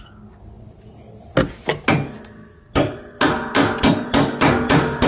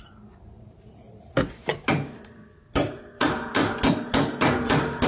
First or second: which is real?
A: first